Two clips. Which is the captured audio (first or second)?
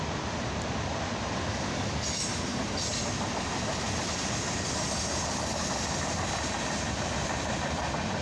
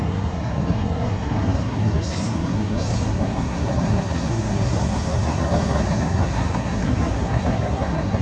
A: first